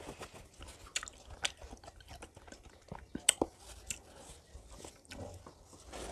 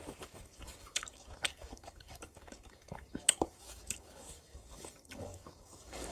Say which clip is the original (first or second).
first